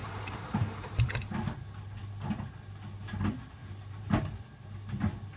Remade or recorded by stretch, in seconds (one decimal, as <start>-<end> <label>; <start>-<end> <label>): 0.0-1.0 remade; 1.0-3.6 recorded; 3.6-4.2 remade; 4.2-5.4 recorded